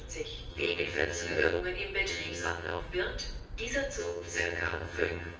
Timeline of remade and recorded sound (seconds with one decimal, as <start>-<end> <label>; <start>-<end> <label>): 0.0-0.5 recorded; 0.5-1.6 remade; 1.6-2.1 recorded; 2.1-2.8 remade; 2.8-4.0 recorded; 4.0-5.4 remade